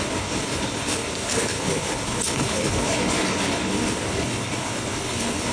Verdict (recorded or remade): remade